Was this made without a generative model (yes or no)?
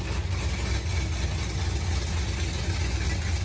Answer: yes